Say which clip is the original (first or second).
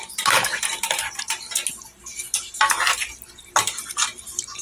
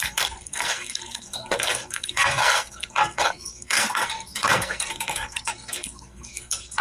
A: first